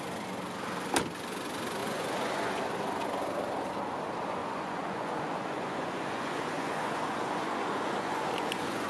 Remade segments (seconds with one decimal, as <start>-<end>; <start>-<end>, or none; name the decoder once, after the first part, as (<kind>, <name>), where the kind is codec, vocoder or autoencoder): 1.8-2.6 (vocoder, Vocos); 4.4-8.9